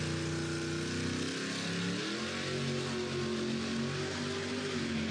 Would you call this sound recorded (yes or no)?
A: yes